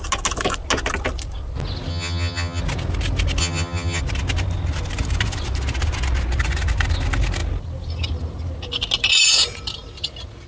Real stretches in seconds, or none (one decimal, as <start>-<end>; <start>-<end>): 0.0-1.9; 2.6-3.4; 4.0-10.5